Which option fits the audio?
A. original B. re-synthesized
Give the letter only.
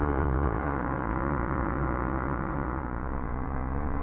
B